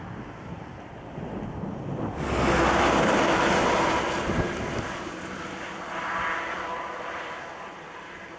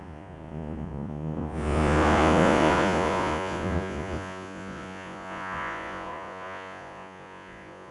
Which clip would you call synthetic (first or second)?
second